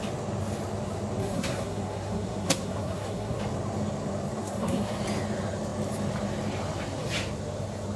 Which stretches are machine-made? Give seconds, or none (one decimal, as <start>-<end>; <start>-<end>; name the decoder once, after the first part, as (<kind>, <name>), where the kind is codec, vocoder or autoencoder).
1.2-3.4 (codec, SNAC); 4.4-5.0